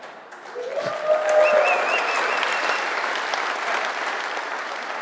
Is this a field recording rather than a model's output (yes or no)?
yes